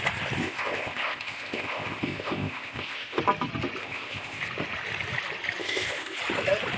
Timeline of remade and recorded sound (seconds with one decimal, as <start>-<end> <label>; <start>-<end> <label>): 0.0-0.4 recorded; 0.4-3.2 remade; 3.2-3.8 recorded; 3.8-4.4 remade; 4.4-5.6 recorded; 5.6-6.2 remade; 6.2-6.8 recorded